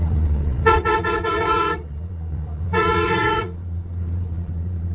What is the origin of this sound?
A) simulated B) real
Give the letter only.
A